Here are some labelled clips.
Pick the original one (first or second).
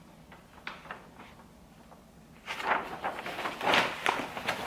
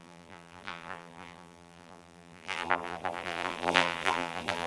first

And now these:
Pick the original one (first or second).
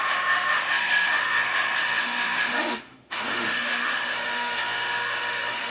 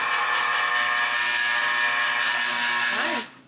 second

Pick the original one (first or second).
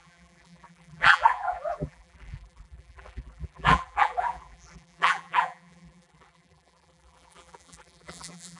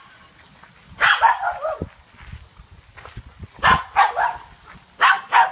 second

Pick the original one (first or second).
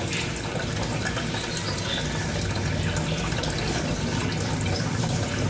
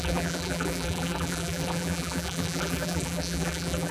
first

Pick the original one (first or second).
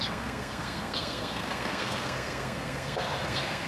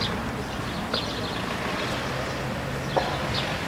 second